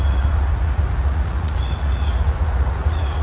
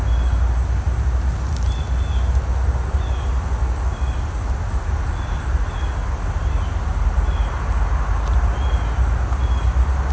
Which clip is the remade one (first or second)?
first